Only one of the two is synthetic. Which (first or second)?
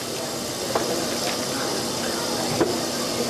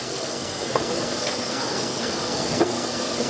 second